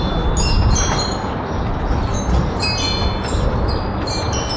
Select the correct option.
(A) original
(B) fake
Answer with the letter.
A